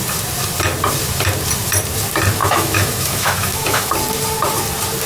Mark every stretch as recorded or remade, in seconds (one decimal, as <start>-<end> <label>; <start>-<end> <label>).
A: 0.0-2.4 recorded; 2.4-3.9 remade; 3.9-5.1 recorded